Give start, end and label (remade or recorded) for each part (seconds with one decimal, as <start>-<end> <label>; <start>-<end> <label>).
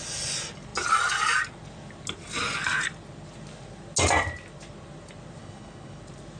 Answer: 0.0-5.4 recorded; 5.4-6.0 remade; 6.0-6.4 recorded